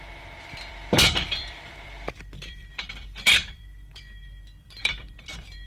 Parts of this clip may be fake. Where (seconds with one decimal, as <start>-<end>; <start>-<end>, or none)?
0.0-5.7

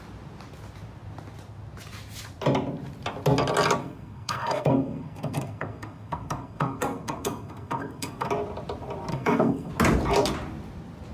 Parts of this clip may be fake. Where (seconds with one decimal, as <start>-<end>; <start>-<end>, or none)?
3.8-8.3; 9.1-9.7

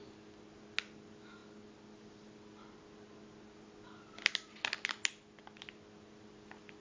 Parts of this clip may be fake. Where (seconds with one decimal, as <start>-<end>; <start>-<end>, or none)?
none

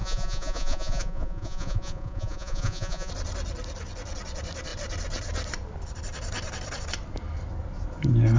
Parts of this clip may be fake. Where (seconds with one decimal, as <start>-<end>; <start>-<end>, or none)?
0.0-3.1

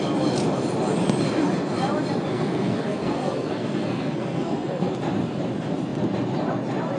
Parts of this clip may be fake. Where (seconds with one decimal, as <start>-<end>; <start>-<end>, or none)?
2.3-4.9

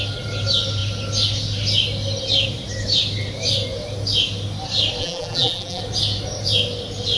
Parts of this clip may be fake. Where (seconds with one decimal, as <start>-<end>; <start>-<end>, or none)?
5.0-5.8

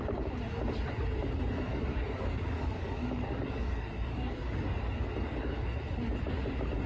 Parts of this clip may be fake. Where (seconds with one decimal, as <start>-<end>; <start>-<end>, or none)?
1.7-5.8